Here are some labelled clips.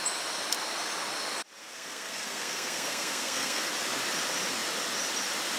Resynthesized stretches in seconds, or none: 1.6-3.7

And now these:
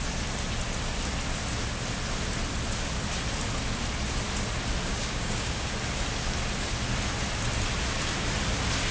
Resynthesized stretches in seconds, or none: 4.9-5.7

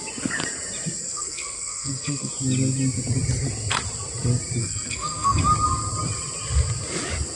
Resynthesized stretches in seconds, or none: 1.0-2.3; 4.6-5.4

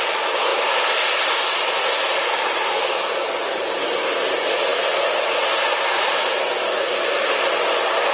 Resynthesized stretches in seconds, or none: 0.5-2.7

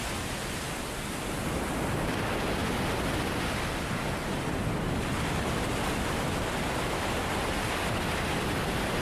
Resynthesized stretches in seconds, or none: none

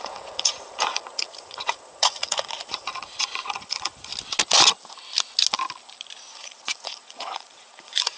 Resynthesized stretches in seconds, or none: 0.0-4.1; 6.3-8.2

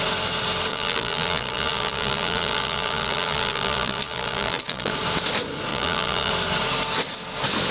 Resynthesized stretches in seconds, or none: 0.7-4.9; 5.7-6.3

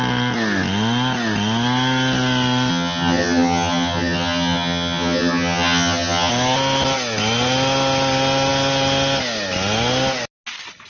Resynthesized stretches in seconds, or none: 2.7-6.3